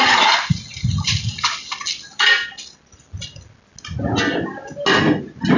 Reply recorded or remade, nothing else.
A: recorded